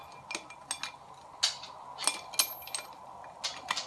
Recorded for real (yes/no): yes